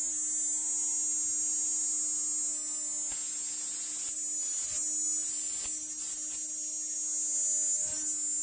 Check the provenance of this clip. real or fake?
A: real